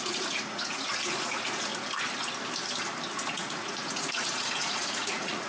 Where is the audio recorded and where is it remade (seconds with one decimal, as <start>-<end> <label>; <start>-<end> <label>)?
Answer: 0.0-1.7 remade; 1.7-3.3 recorded; 3.3-5.5 remade